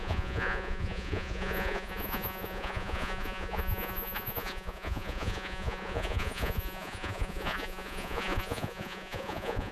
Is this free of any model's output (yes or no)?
no